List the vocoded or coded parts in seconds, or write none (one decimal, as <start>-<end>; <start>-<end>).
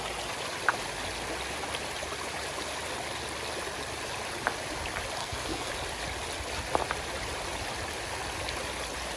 5.2-5.7